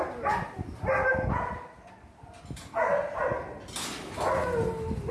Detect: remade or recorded recorded